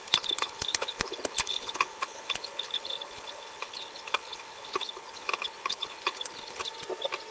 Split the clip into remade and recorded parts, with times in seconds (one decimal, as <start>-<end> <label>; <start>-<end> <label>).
0.0-6.6 remade; 6.6-7.3 recorded